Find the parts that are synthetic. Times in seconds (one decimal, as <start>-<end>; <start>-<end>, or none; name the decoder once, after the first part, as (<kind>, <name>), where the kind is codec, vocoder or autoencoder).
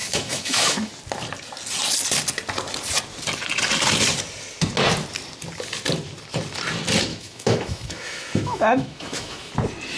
0.0-0.9 (autoencoder, DAC-VAE); 7.1-9.5